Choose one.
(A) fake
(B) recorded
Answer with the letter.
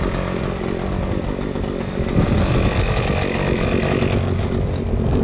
B